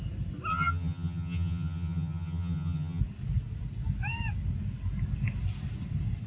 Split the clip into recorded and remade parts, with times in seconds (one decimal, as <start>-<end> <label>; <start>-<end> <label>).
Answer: 0.0-0.5 recorded; 0.5-3.0 remade; 3.0-6.3 recorded